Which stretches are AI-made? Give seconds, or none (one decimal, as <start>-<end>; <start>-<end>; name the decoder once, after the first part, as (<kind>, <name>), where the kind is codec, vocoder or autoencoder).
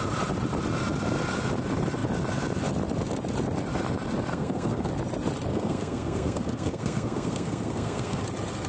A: 4.3-4.9 (codec, SNAC); 5.5-8.2